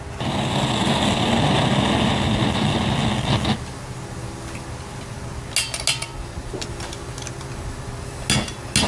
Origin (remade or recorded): recorded